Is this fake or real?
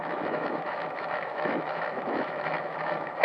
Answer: fake